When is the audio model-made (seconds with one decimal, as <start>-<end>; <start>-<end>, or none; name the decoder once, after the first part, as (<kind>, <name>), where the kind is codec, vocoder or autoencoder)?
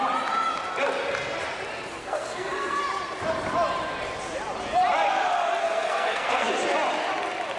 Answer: 2.0-2.8 (codec, SNAC); 5.6-6.5